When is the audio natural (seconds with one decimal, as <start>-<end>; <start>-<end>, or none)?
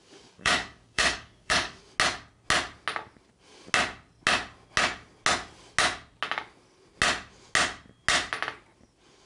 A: 1.8-9.3